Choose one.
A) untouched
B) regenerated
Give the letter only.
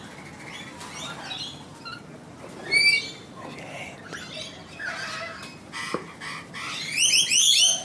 A